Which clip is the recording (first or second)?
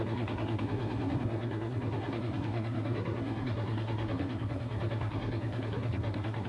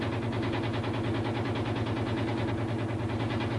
second